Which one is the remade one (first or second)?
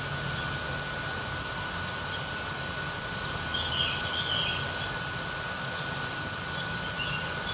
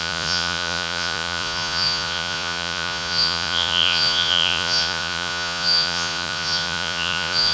second